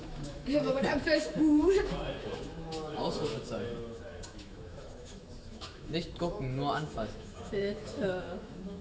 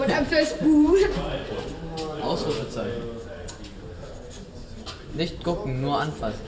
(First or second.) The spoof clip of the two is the first